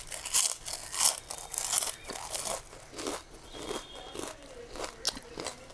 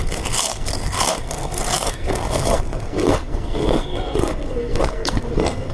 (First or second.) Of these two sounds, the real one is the first